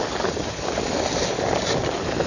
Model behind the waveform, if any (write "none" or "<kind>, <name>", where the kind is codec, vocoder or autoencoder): none